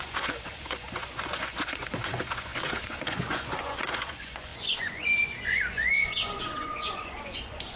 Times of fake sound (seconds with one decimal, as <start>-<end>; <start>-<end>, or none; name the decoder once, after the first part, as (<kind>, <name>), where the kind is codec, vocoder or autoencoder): 0.0-7.8 (vocoder, Vocos)